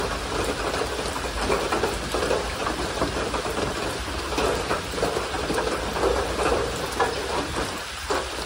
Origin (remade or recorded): recorded